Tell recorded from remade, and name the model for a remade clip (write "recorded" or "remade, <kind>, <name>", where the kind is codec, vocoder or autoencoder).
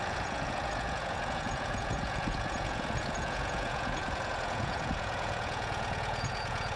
remade, vocoder, Vocos